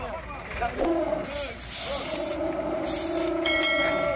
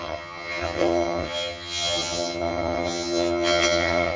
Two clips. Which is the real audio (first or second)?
first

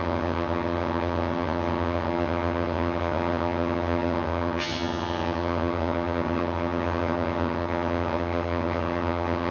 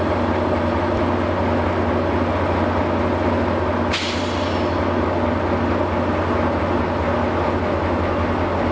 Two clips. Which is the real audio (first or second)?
second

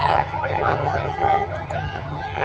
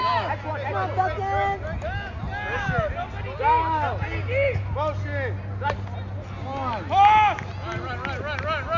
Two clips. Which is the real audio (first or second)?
second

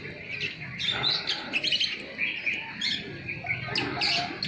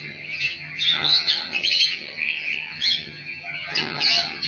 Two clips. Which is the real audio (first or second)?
first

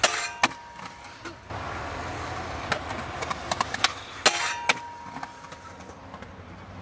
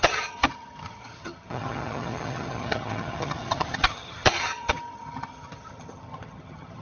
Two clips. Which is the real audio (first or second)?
first